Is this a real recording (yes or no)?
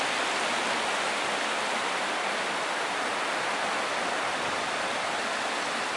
no